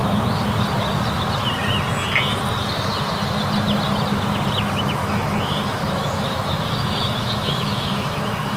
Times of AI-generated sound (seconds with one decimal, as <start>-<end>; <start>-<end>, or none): 5.0-8.6